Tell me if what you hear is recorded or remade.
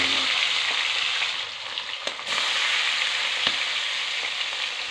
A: recorded